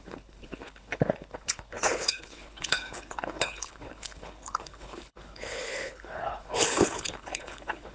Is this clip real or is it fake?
fake